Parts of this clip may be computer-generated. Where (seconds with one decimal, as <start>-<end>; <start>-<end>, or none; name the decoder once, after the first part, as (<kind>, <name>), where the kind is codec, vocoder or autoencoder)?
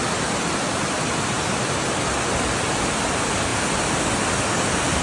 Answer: none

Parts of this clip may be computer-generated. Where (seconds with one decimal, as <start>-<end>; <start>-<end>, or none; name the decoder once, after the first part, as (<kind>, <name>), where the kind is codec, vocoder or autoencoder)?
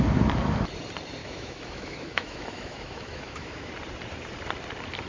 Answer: 1.2-3.7 (autoencoder, DAC-VAE)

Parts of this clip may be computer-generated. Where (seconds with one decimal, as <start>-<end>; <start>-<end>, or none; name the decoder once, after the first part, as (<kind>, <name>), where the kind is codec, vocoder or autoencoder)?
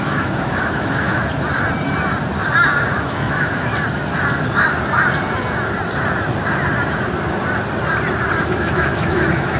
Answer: 0.0-1.2 (autoencoder, DAC-VAE); 2.9-3.7; 8.4-9.6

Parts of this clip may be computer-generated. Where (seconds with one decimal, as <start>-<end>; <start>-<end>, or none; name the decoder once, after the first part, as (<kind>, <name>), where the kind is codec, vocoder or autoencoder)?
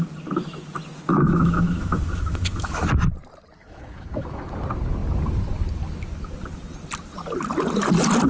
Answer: 1.1-2.9 (autoencoder, DAC-VAE); 3.6-4.4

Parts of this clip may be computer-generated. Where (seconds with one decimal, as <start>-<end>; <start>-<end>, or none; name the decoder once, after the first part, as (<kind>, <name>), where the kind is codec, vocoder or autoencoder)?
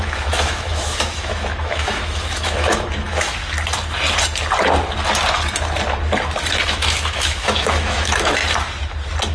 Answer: 0.0-3.4 (autoencoder, DAC-VAE); 6.7-8.4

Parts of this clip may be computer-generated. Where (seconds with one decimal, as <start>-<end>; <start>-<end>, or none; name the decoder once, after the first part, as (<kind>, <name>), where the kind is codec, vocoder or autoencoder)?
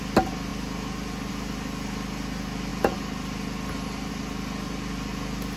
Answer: none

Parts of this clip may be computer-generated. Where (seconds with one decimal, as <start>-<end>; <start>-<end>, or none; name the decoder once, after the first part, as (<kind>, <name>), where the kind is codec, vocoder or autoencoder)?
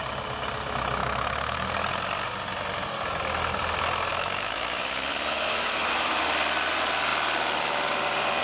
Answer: 1.0-1.7 (autoencoder, DAC-VAE); 4.1-6.2